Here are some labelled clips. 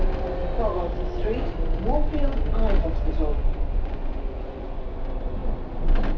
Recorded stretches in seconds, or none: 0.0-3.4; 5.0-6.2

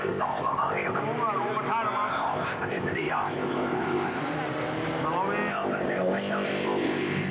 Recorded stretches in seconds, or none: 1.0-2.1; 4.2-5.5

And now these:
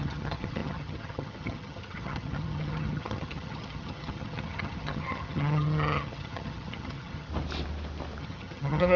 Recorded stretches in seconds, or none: 7.3-8.2